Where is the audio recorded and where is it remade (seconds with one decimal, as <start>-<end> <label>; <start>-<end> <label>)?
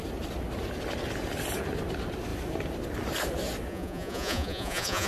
0.0-3.7 recorded; 3.7-5.1 remade